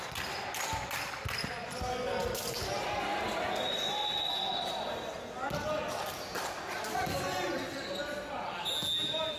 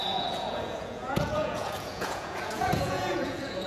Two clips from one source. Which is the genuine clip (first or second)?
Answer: first